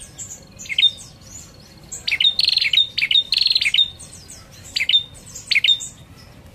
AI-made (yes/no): no